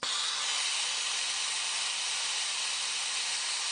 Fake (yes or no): no